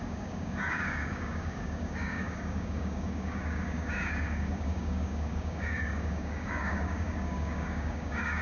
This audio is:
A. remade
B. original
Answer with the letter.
A